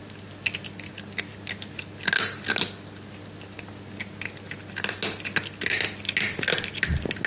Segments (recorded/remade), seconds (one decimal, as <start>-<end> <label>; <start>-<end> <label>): 0.0-7.3 recorded